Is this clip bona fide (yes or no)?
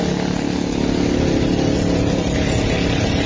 yes